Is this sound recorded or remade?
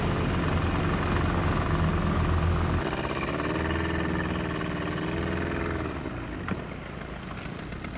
recorded